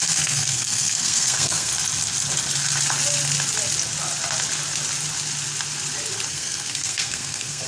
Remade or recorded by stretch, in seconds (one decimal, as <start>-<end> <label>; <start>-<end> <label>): 0.0-1.7 remade; 1.7-6.3 recorded; 6.3-7.7 remade